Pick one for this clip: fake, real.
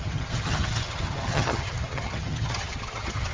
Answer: fake